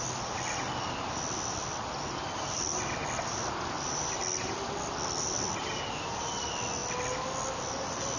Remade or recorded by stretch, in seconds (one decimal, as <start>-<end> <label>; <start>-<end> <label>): 0.0-8.2 recorded